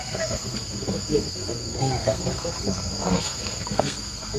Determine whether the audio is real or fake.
fake